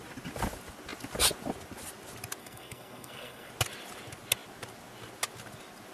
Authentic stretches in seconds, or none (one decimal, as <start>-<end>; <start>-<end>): 0.0-2.4; 3.5-5.9